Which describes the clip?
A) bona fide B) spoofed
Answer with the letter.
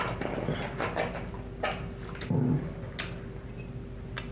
A